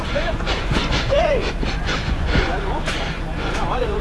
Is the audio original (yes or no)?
no